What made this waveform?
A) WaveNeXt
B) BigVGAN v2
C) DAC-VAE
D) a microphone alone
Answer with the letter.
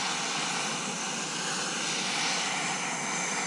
D